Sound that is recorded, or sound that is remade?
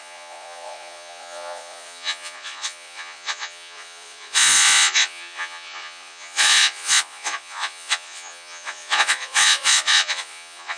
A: remade